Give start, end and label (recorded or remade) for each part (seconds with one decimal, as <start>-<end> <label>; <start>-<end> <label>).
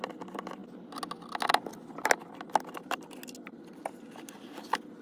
0.0-5.0 recorded